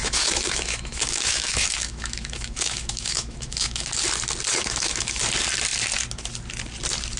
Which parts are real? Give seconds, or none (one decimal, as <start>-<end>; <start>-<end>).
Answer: 3.9-4.5; 5.2-7.2